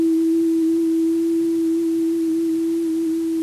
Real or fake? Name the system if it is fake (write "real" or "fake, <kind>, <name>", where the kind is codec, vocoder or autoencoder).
fake, vocoder, BigVGAN v2